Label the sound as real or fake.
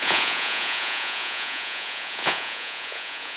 fake